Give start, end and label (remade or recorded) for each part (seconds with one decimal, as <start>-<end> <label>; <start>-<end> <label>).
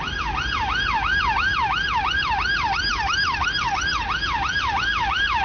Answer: 0.0-5.4 recorded